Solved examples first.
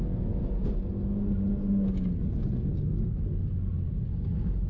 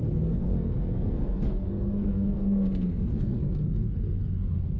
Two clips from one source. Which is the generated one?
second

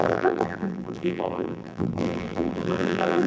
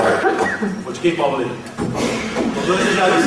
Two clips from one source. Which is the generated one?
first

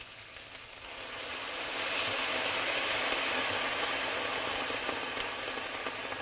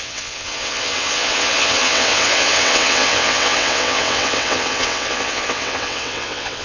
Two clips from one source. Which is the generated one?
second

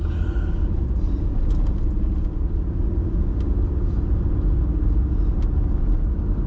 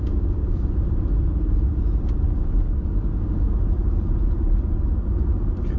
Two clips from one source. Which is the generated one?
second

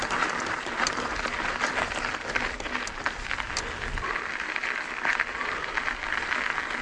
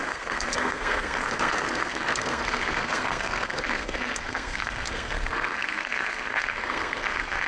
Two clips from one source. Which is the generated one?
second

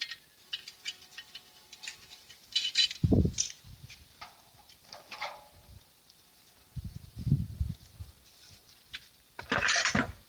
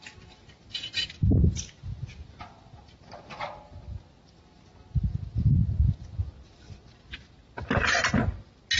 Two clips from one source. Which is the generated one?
first